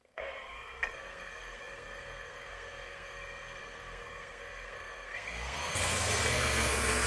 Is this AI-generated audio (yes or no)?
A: yes